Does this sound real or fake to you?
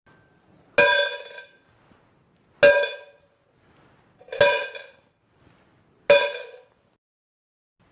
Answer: real